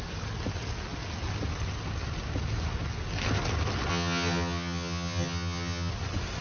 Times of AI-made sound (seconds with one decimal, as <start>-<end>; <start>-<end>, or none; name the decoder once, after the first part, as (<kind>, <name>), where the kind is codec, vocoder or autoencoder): 3.9-5.9 (vocoder, HiFi-GAN)